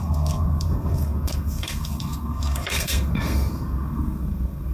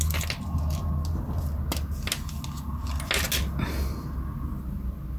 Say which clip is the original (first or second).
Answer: second